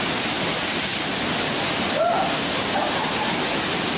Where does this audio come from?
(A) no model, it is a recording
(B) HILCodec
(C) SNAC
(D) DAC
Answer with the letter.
A